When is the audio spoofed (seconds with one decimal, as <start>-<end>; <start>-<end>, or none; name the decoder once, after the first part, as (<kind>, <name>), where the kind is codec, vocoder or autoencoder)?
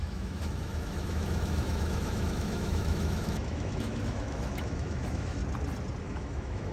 0.0-5.4 (autoencoder, DAC-VAE); 6.0-6.7